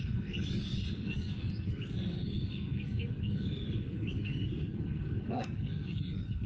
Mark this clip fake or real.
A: fake